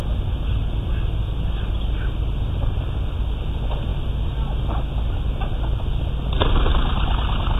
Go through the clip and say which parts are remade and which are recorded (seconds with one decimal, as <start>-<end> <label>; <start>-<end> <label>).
0.0-7.6 recorded